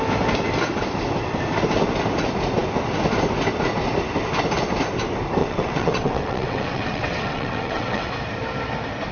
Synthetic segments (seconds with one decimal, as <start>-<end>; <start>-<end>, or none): 5.4-8.1

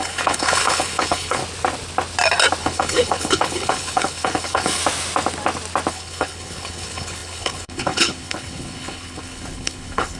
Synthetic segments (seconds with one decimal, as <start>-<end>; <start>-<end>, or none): 0.0-1.4; 2.6-4.8; 5.9-10.2

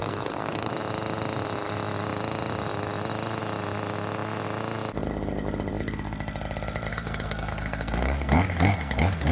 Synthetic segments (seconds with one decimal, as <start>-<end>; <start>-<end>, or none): 0.0-0.7; 6.9-9.3

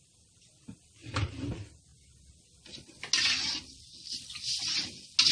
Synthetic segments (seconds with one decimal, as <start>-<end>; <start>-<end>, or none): 0.0-1.9

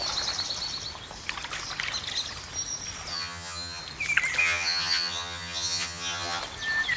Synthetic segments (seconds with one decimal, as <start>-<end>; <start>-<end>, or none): 3.1-3.8; 4.4-6.4

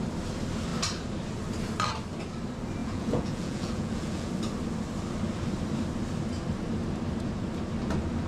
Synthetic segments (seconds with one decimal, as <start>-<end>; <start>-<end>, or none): 2.8-4.3